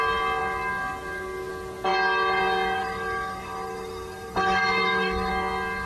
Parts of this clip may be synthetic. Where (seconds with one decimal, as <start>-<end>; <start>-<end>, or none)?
2.8-5.3